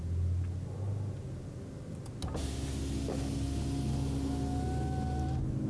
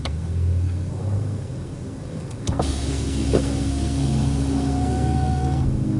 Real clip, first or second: first